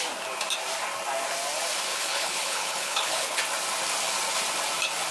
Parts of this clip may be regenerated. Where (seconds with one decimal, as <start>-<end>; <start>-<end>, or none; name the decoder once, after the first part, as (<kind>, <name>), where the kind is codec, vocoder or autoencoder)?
1.9-3.4 (codec, HILCodec)